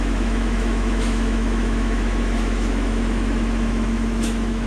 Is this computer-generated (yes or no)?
yes